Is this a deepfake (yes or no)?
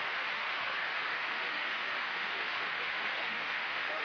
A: yes